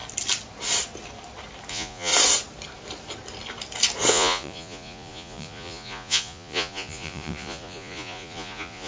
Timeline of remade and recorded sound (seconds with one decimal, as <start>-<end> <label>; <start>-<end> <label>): 0.0-1.7 recorded; 1.7-2.1 remade; 2.1-4.1 recorded; 4.1-8.9 remade